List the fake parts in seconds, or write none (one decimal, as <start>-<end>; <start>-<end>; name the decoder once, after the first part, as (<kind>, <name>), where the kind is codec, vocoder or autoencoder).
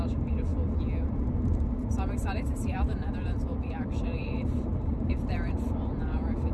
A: 0.0-0.5 (vocoder, BigVGAN v2); 1.1-6.5